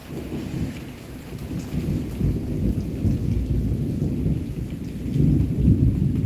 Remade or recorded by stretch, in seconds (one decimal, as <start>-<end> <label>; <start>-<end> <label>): 0.0-6.3 recorded

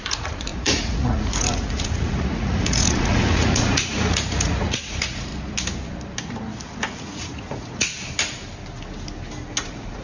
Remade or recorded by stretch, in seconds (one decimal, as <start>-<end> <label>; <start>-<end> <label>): 0.0-5.3 remade; 5.3-7.0 recorded; 7.0-7.9 remade; 7.9-9.6 recorded; 9.6-10.0 remade

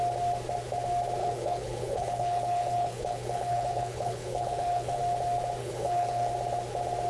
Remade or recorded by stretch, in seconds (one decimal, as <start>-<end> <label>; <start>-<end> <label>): 0.0-1.2 recorded; 1.2-5.0 remade; 5.0-5.6 recorded; 5.6-6.3 remade; 6.3-7.1 recorded

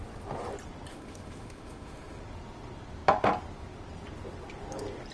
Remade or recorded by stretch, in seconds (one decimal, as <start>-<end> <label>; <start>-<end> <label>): 0.0-0.9 recorded; 0.9-2.2 remade; 2.2-5.1 recorded